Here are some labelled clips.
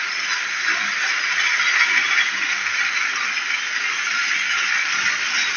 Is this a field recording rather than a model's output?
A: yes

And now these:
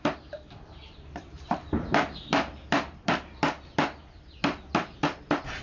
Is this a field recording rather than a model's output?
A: no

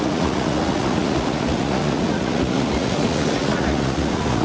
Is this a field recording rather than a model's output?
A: no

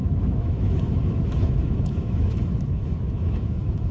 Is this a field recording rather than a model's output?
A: no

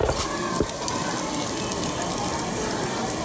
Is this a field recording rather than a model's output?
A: yes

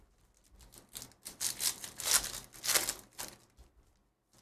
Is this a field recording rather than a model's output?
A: yes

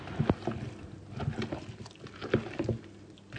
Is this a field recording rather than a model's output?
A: yes